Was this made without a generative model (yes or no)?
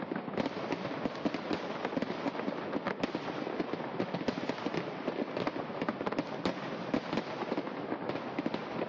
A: yes